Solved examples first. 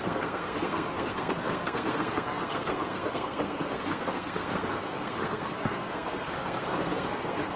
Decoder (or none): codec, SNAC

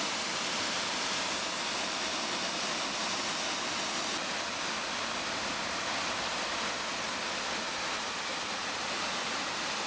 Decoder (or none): none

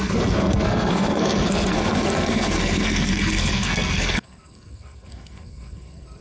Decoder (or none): codec, SNAC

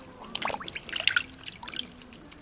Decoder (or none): none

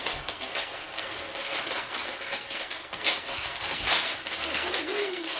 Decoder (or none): codec, SNAC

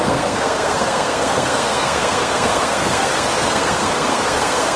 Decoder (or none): codec, SNAC